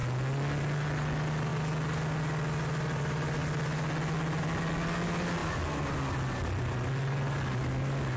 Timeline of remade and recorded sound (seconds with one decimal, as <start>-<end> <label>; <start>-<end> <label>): 0.0-8.2 recorded